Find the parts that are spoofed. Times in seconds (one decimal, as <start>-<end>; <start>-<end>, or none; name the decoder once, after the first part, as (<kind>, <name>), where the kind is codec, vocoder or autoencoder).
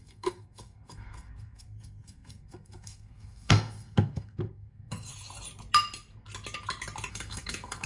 0.0-5.1 (codec, SNAC); 7.1-7.9